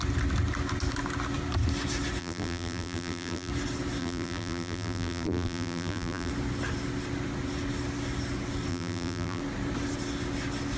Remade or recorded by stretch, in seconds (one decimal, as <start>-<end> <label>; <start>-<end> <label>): 0.0-2.2 recorded; 2.2-3.5 remade; 3.5-4.0 recorded; 4.0-6.3 remade; 6.3-8.7 recorded; 8.7-9.4 remade; 9.4-10.8 recorded